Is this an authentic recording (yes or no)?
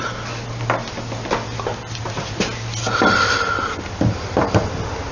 yes